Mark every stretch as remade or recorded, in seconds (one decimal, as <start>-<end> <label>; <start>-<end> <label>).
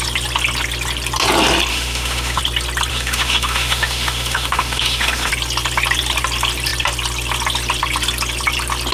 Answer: 0.0-1.7 recorded; 1.7-2.4 remade; 2.4-2.9 recorded; 2.9-5.3 remade; 5.3-8.9 recorded